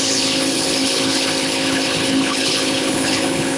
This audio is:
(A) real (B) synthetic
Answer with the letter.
B